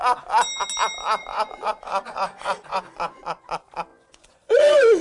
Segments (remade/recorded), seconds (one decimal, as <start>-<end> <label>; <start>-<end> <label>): 0.0-1.2 recorded; 1.2-3.5 remade; 3.5-3.9 recorded; 3.9-5.0 remade